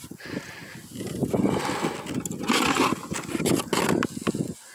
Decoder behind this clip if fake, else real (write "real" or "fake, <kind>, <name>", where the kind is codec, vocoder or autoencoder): real